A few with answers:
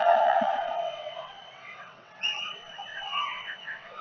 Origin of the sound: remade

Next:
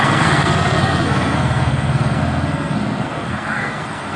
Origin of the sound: remade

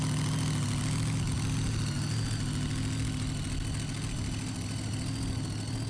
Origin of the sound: recorded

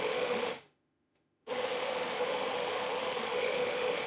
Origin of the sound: remade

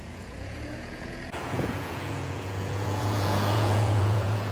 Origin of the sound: remade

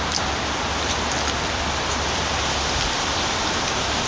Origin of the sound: recorded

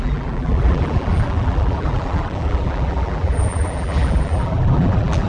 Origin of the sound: remade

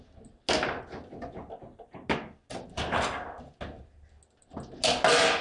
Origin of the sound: recorded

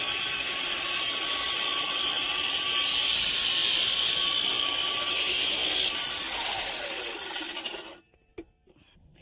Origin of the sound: recorded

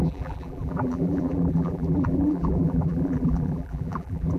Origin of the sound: remade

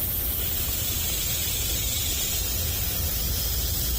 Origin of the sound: recorded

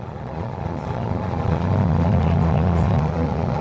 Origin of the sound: remade